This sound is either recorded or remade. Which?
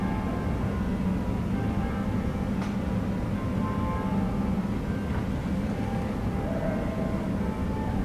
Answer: recorded